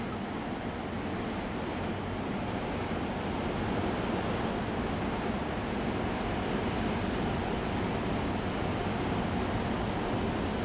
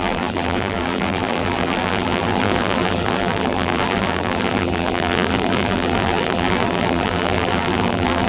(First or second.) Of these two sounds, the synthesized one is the second